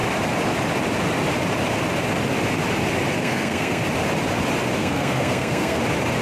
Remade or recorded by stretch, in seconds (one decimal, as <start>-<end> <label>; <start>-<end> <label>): 0.0-3.2 recorded; 3.2-3.8 remade; 3.8-4.8 recorded; 4.8-5.8 remade; 5.8-6.2 recorded